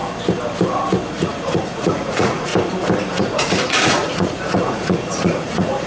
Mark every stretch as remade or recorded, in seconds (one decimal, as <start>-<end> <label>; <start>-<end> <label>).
0.0-1.1 recorded; 1.1-2.5 remade; 2.5-3.1 recorded; 3.1-5.9 remade